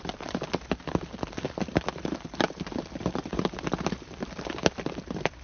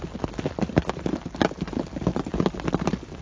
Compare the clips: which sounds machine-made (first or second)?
first